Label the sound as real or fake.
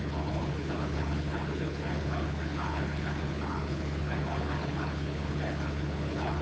fake